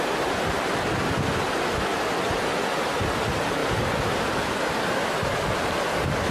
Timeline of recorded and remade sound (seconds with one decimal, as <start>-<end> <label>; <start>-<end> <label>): 0.0-6.3 recorded